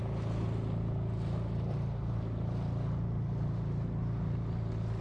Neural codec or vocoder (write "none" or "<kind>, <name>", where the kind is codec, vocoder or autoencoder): none